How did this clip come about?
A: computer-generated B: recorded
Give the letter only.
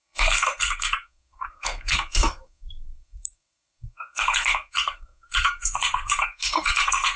A